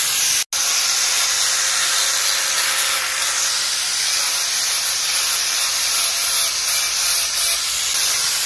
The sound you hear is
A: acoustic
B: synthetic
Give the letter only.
A